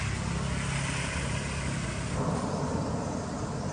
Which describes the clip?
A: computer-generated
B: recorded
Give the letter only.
B